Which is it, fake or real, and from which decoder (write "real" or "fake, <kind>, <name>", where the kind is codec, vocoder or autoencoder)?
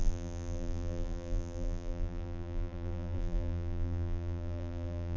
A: fake, vocoder, BigVGAN v2